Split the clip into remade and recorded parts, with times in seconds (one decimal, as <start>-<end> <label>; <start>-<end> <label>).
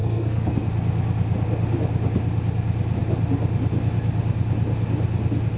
0.0-0.5 remade; 0.5-5.6 recorded